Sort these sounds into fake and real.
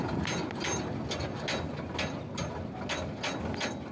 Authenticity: real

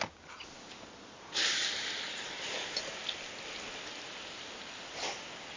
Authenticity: real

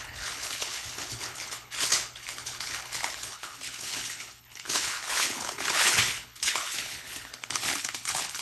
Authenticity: fake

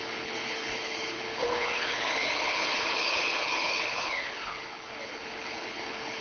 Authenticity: fake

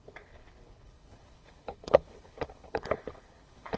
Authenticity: fake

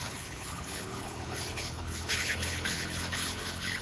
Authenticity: fake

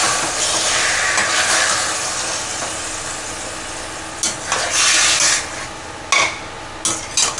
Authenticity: real